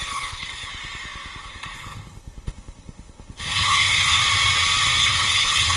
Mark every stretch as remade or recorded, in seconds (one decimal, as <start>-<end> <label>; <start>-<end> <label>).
0.0-0.7 remade; 0.7-1.4 recorded; 1.4-4.2 remade; 4.2-5.0 recorded; 5.0-5.8 remade